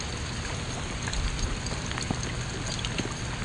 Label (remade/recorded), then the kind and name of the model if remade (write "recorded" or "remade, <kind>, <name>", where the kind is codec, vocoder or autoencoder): recorded